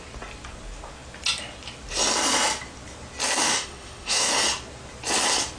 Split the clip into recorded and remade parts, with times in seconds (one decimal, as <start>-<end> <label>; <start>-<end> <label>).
0.0-3.4 recorded; 3.4-4.3 remade; 4.3-5.6 recorded

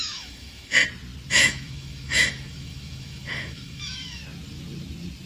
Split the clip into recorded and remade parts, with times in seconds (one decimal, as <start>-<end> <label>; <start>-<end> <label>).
0.0-0.8 remade; 0.8-1.3 recorded; 1.3-4.2 remade; 4.2-5.3 recorded